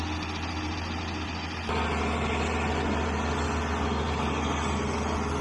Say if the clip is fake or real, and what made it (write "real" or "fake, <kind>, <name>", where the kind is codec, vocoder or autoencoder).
real